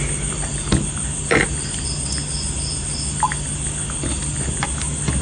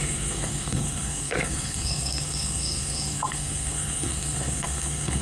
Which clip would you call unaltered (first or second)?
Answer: first